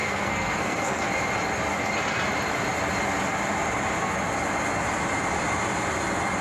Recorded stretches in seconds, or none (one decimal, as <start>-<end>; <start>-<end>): 1.1-6.4